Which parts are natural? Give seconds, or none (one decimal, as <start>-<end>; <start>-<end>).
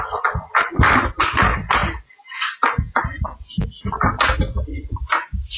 0.0-4.7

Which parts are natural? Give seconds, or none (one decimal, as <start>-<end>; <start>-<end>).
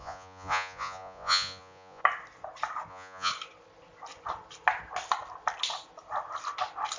2.0-2.9; 3.3-7.0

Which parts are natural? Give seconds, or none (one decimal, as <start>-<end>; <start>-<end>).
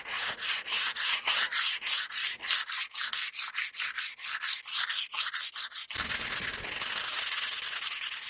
2.2-6.9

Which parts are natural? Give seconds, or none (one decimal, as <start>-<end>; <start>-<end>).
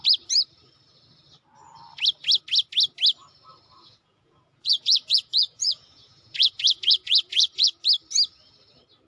0.0-3.8; 7.7-9.1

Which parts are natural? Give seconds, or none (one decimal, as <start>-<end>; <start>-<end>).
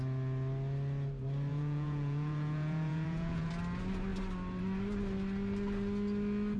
0.0-1.5; 3.5-6.6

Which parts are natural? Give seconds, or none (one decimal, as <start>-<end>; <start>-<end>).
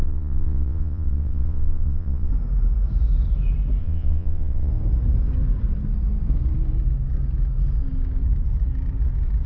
2.3-3.8; 4.7-9.5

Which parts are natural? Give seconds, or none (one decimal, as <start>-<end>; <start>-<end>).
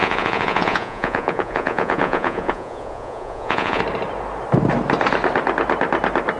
3.8-6.4